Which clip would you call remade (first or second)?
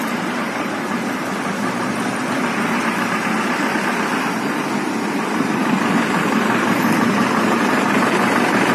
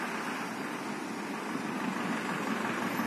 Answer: first